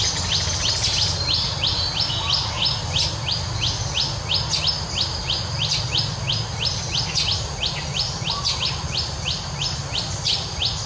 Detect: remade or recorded recorded